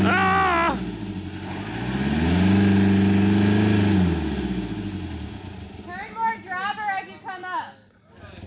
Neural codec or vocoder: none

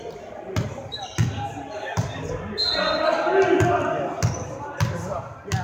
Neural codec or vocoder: none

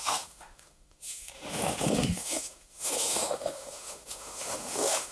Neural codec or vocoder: autoencoder, DAC-VAE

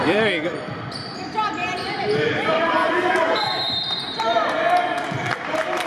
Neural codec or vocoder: vocoder, BigVGAN v2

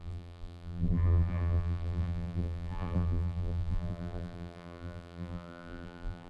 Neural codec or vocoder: vocoder, BigVGAN v2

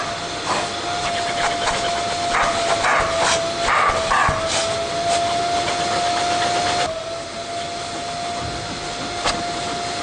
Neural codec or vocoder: none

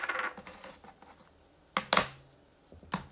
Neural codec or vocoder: none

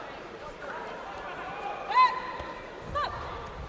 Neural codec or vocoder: none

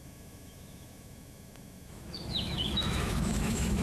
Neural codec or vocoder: autoencoder, DAC-VAE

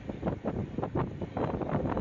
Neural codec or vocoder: none